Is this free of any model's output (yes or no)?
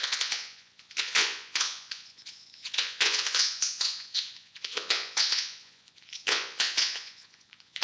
no